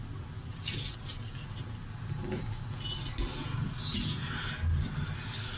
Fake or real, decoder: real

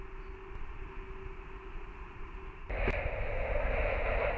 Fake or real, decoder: real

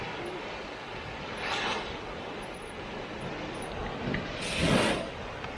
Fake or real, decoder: real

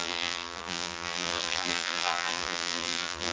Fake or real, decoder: fake, vocoder, BigVGAN v2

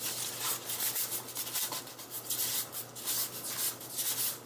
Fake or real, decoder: real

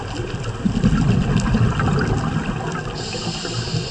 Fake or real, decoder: real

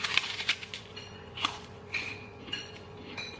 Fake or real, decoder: fake, vocoder, Vocos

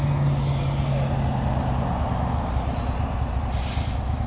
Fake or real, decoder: real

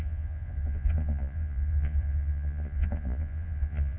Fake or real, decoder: fake, vocoder, Vocos